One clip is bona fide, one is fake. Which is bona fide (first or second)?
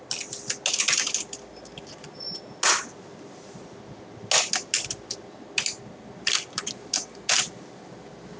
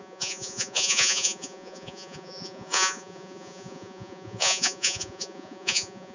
first